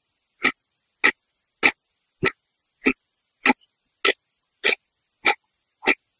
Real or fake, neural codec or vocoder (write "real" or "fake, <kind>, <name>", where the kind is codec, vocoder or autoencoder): real